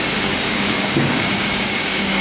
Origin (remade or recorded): remade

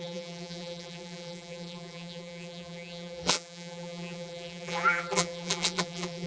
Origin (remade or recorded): remade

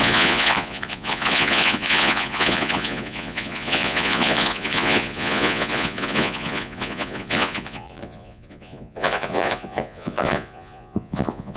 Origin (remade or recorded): remade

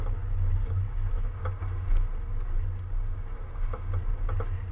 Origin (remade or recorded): recorded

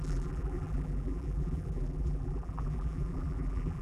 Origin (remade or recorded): remade